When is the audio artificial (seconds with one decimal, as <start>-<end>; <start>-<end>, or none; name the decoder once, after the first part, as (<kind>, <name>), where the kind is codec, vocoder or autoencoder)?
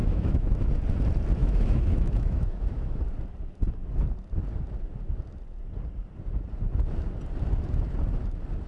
0.0-0.7 (autoencoder, DAC-VAE); 1.4-3.0